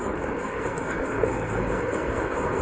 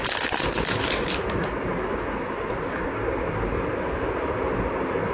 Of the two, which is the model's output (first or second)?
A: first